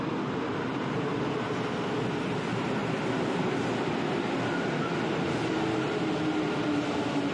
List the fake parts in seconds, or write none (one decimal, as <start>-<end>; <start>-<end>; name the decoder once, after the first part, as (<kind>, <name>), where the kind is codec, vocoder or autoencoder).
none